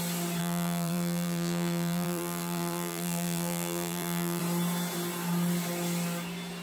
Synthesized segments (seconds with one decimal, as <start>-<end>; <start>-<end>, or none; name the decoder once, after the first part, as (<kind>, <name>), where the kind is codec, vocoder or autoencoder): 0.4-4.4 (vocoder, BigVGAN v2)